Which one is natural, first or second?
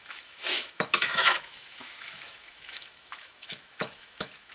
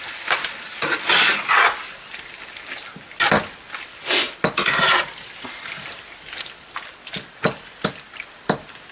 second